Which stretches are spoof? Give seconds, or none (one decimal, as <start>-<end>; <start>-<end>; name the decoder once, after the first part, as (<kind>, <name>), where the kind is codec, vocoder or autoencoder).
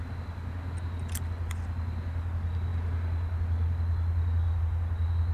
none